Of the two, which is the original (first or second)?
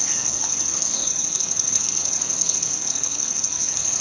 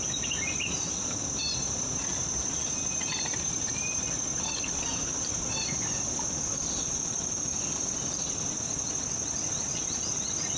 second